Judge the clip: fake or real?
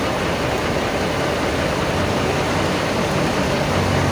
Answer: real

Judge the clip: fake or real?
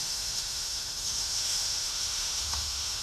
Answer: fake